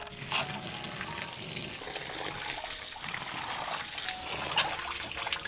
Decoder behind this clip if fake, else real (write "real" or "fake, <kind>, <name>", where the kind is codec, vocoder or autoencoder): real